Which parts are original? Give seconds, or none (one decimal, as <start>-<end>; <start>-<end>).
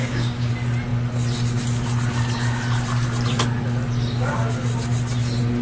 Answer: 0.5-5.6